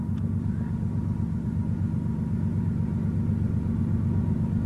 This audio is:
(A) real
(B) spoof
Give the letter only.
A